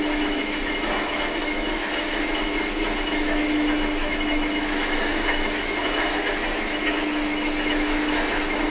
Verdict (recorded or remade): remade